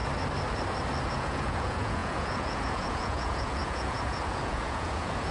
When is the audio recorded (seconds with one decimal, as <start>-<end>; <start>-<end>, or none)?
0.0-1.1